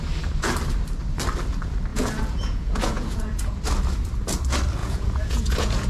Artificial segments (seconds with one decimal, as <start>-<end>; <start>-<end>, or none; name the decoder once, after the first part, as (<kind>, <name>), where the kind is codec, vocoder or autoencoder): 1.9-3.5 (vocoder, Vocos); 4.8-5.9